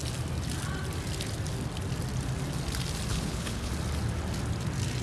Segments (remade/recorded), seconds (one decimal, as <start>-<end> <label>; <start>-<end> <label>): 0.0-3.1 recorded; 3.1-3.7 remade; 3.7-5.0 recorded